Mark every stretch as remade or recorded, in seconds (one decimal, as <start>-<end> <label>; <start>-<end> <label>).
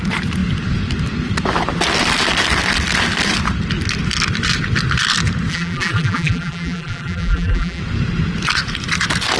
0.0-5.5 recorded; 5.5-7.8 remade; 7.8-9.4 recorded